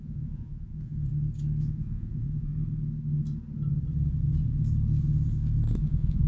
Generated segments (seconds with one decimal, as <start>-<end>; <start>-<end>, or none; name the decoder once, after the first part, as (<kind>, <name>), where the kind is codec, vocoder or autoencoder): 0.0-1.1 (vocoder, Vocos); 1.6-2.5; 5.8-6.3